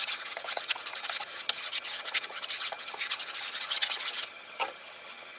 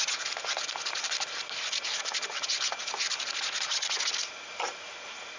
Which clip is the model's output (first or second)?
first